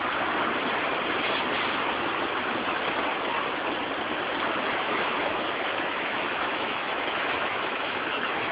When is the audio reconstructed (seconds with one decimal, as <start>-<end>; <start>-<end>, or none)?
4.6-8.5

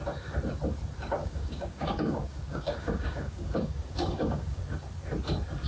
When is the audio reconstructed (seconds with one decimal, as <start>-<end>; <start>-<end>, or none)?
1.2-4.6